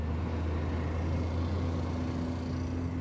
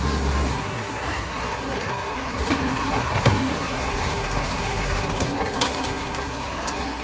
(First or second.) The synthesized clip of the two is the second